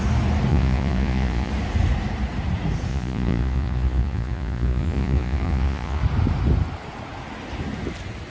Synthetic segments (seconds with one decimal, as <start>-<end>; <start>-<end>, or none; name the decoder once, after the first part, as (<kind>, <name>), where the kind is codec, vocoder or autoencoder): 0.5-1.5 (vocoder, Vocos); 2.9-6.0